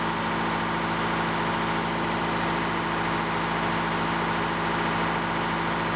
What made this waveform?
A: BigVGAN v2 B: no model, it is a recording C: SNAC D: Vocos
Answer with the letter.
B